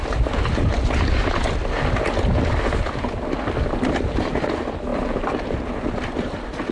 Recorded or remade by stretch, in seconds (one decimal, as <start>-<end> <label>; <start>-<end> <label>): 0.0-6.7 recorded